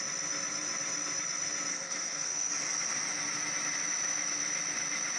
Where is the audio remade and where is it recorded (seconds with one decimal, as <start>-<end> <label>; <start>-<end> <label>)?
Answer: 0.0-1.7 recorded; 1.7-2.5 remade; 2.5-5.2 recorded